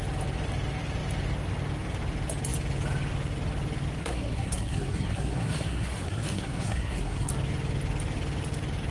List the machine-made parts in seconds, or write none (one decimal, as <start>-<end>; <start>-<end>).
4.0-7.3